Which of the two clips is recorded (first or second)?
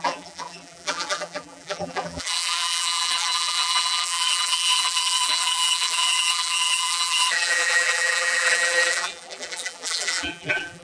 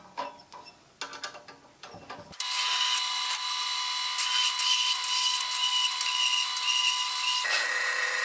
second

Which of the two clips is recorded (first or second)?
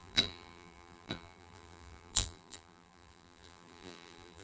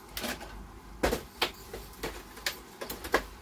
second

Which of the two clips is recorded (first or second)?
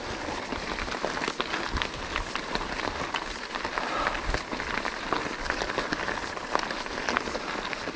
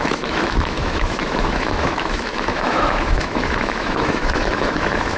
first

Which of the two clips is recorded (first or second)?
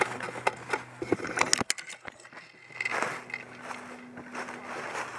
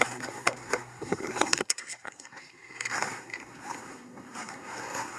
first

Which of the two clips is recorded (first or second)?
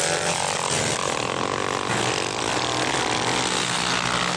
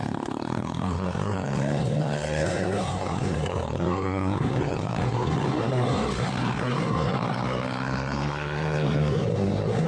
first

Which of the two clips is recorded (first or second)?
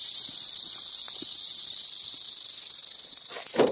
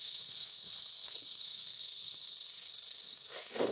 first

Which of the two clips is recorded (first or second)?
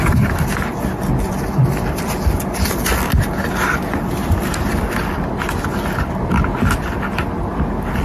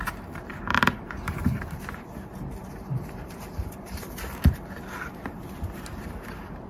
first